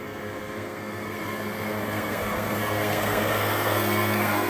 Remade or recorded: remade